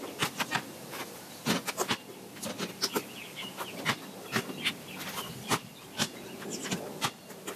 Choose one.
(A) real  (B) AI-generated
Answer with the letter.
A